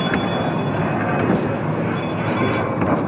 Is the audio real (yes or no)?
yes